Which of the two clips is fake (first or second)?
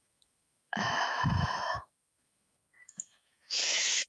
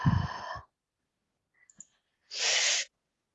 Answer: first